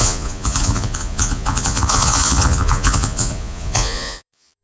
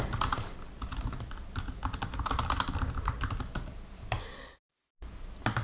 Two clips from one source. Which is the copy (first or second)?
first